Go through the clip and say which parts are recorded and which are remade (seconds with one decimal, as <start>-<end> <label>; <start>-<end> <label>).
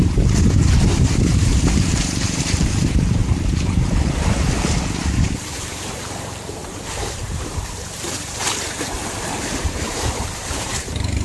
0.0-3.2 remade; 3.2-5.0 recorded; 5.0-11.2 remade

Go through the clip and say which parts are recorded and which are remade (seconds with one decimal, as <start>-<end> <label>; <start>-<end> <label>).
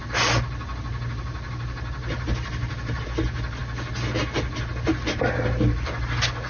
0.0-2.0 recorded; 2.0-3.0 remade; 3.0-6.5 recorded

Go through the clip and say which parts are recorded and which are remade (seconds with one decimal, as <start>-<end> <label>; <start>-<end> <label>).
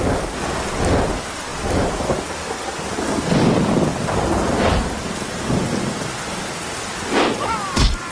0.0-8.1 recorded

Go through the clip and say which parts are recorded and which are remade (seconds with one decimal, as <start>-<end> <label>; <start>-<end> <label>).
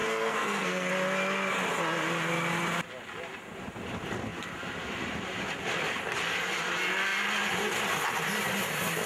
0.0-0.9 remade; 0.9-9.1 recorded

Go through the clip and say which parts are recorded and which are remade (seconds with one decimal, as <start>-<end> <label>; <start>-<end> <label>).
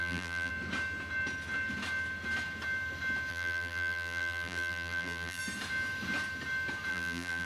0.0-0.5 remade; 0.5-3.3 recorded; 3.3-5.4 remade; 5.4-6.9 recorded; 6.9-7.4 remade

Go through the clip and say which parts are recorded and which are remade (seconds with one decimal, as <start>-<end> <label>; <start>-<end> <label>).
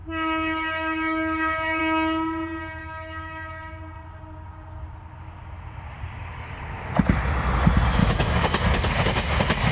0.0-1.8 remade; 1.8-2.8 recorded; 2.8-3.8 remade; 3.8-8.0 recorded; 8.0-8.6 remade; 8.6-9.7 recorded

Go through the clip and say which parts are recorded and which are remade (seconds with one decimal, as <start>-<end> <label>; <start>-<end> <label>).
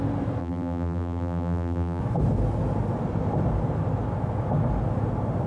0.0-0.4 recorded; 0.4-2.0 remade; 2.0-5.5 recorded